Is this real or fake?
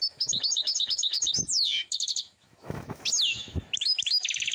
fake